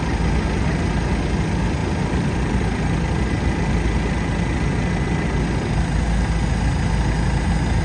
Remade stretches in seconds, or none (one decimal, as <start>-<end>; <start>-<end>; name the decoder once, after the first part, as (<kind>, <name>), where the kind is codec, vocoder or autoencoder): none